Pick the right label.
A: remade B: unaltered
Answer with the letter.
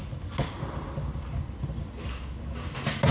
B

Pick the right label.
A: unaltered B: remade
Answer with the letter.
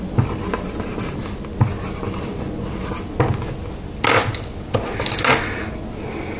A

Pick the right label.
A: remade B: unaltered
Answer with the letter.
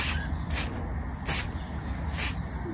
B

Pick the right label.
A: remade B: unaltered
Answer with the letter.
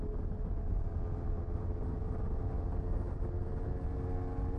B